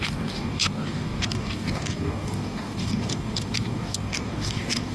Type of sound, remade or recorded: remade